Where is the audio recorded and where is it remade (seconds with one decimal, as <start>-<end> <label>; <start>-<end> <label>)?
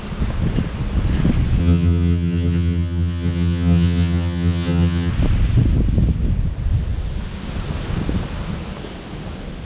0.0-1.6 recorded; 1.6-5.1 remade; 5.1-9.6 recorded